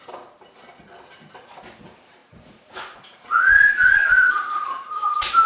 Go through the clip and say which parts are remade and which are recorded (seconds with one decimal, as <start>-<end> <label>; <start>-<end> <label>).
0.0-2.2 recorded; 2.2-5.5 remade